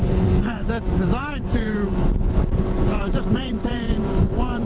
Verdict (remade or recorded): remade